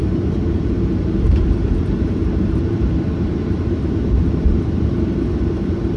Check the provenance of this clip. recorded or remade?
remade